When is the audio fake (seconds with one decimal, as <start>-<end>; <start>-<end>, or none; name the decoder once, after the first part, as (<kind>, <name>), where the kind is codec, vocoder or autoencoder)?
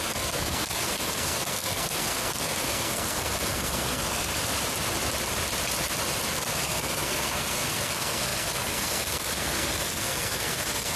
0.0-4.3 (codec, SNAC); 6.3-11.0